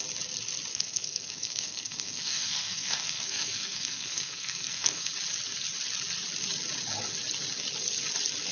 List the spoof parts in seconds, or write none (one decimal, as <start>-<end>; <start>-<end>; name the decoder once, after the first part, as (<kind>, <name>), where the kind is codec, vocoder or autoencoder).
0.7-5.1 (codec, SNAC)